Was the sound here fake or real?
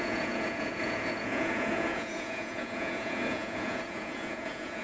fake